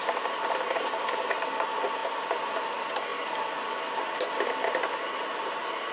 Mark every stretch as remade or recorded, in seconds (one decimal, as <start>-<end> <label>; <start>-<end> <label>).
0.0-5.9 recorded